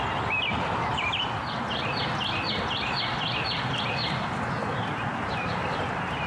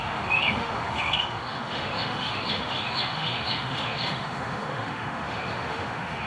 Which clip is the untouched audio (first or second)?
first